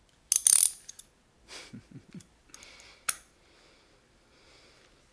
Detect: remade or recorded recorded